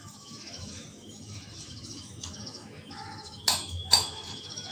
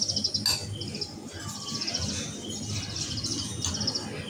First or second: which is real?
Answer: second